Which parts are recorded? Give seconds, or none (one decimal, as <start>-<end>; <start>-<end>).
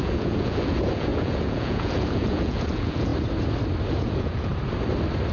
3.1-3.9; 4.5-5.3